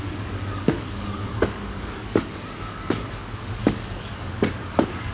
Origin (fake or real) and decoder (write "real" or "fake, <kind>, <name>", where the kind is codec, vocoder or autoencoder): fake, codec, DAC